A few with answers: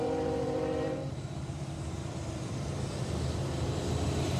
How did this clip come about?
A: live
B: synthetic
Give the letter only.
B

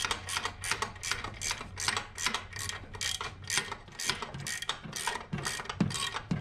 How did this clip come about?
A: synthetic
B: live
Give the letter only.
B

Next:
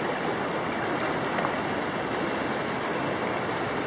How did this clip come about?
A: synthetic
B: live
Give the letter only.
B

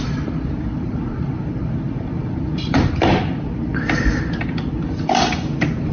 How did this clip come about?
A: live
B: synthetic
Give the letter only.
B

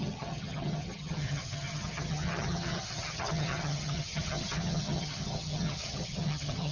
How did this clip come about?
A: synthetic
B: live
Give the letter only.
A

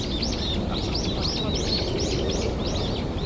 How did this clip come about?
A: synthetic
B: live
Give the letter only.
B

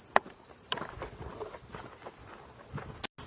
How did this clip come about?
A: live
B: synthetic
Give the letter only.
A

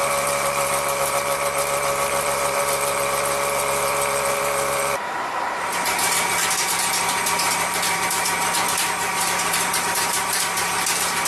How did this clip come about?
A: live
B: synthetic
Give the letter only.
B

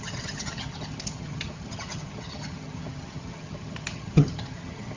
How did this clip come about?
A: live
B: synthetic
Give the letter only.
B